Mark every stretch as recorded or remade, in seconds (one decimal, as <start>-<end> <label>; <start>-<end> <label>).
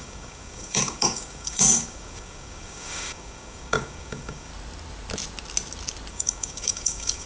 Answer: 0.0-4.5 remade; 4.5-6.1 recorded; 6.1-7.3 remade